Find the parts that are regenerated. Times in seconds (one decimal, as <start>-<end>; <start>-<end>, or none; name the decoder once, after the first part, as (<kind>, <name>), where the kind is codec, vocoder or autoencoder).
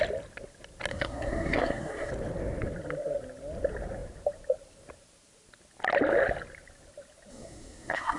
0.9-2.1 (codec, SNAC); 7.3-8.2